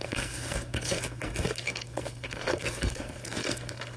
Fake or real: fake